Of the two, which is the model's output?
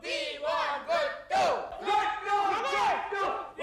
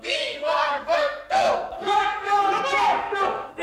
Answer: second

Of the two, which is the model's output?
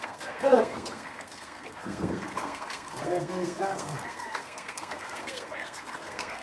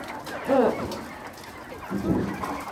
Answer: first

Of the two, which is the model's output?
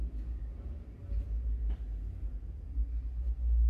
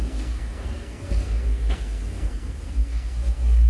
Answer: second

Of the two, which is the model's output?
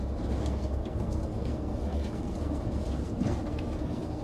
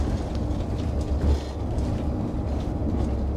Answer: first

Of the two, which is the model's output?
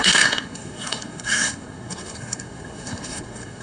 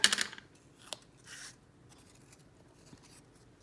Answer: first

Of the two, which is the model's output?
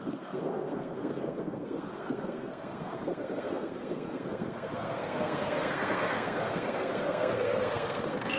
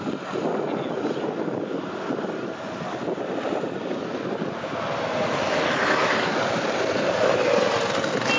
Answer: first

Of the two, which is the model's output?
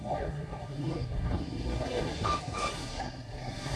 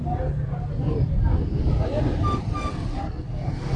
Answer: first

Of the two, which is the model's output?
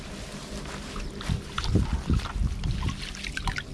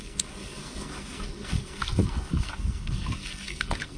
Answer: second